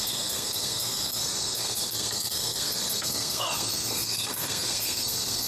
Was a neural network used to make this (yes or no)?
yes